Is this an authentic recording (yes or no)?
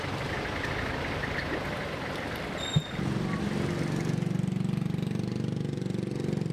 yes